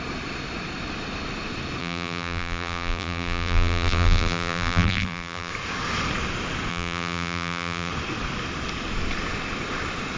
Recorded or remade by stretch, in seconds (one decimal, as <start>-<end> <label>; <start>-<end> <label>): 0.0-1.8 recorded; 1.8-5.5 remade; 5.5-6.7 recorded; 6.7-7.9 remade; 7.9-10.2 recorded